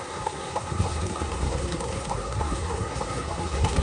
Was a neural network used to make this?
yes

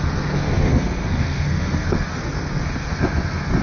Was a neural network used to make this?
yes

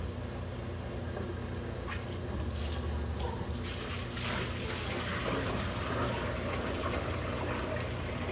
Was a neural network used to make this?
no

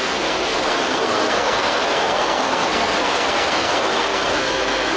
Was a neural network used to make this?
yes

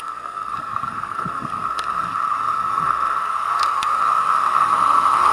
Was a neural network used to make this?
yes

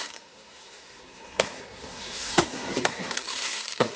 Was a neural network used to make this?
yes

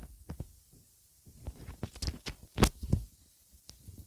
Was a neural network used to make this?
no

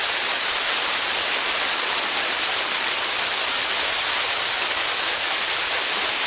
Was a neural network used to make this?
no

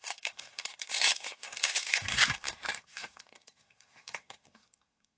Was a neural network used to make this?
yes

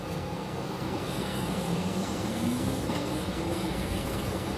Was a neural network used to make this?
yes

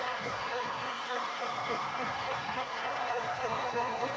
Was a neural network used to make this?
yes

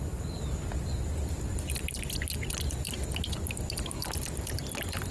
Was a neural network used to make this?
no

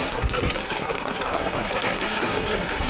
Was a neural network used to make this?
yes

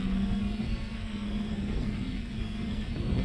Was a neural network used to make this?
yes